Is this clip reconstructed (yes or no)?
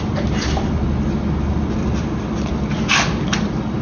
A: no